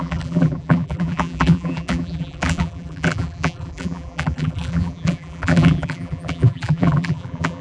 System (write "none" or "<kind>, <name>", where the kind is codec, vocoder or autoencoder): vocoder, BigVGAN v2